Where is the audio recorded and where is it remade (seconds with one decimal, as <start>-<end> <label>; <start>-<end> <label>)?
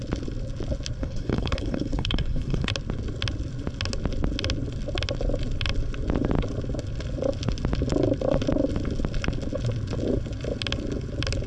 0.0-1.0 recorded; 1.0-2.7 remade; 2.7-11.5 recorded